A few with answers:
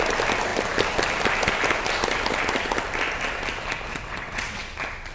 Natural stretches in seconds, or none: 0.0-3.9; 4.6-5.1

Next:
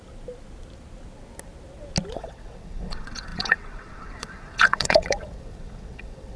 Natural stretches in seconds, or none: 0.0-2.1

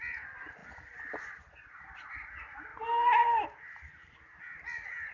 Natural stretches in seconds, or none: 0.0-5.1

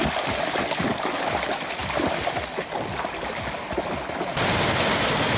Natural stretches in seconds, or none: 0.0-5.4

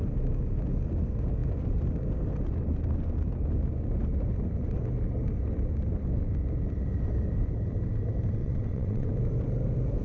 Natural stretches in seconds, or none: 0.0-8.4; 9.1-10.0

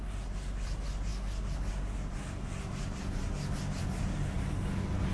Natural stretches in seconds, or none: 0.0-5.1

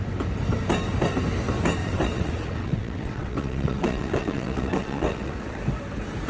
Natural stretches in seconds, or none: 0.0-1.8; 5.6-6.3

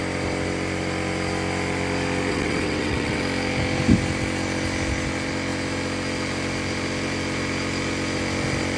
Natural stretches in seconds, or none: 0.0-2.3; 3.2-8.8